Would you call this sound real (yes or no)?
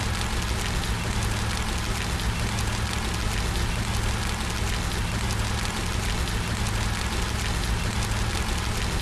yes